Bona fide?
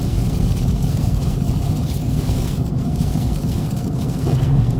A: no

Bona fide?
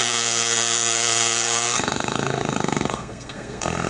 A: no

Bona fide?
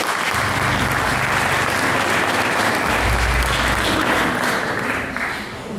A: yes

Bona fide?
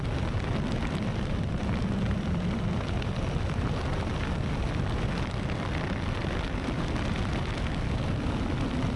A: yes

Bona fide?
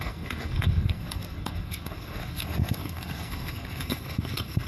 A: no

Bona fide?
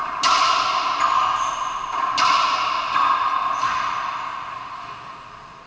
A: yes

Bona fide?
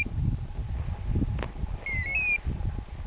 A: yes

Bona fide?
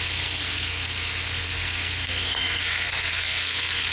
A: no